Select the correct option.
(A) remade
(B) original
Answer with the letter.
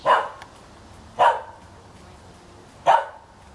B